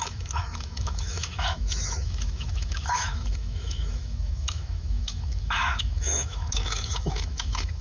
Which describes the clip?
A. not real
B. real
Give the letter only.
A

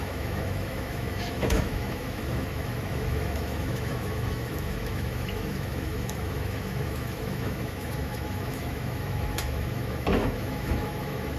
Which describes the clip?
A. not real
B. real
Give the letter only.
A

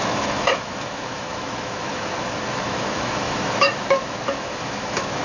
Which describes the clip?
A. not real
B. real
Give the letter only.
A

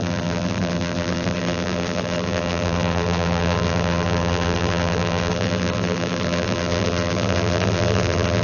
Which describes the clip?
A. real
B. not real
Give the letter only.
B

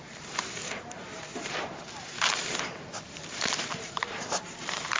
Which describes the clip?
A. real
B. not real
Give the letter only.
B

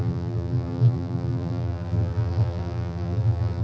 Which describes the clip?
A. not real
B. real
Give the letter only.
A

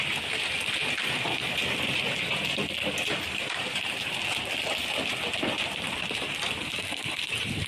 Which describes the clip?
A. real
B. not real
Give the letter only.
A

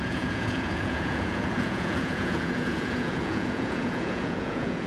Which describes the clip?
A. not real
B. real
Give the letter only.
A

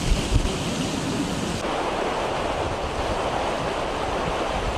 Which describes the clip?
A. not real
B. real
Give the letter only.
B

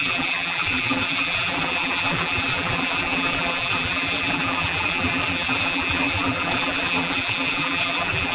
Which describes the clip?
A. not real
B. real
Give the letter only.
A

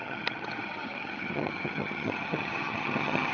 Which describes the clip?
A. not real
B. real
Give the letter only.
A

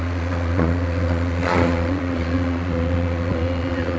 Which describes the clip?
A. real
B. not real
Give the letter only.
B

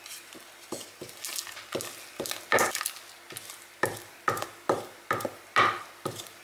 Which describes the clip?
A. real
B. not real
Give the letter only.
A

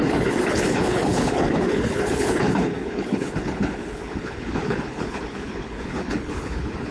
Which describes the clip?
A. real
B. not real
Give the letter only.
B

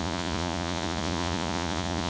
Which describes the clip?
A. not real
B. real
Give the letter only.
A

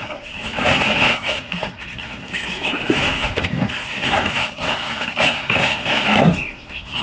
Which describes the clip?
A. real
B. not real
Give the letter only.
B